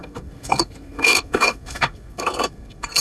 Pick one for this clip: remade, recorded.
remade